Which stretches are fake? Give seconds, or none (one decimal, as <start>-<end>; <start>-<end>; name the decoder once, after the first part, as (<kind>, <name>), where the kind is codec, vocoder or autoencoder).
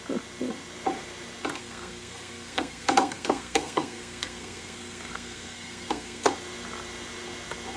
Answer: 1.6-6.3 (codec, SNAC)